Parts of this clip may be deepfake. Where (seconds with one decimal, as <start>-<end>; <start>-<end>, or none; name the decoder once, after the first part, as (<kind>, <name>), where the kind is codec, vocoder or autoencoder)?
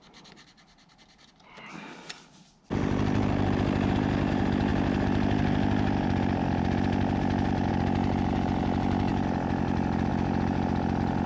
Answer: none